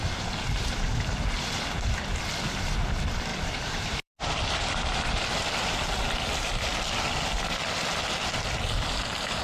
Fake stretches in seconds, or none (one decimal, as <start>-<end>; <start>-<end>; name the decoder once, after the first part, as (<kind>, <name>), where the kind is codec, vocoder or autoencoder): 0.0-1.2 (vocoder, BigVGAN v2); 3.3-4.1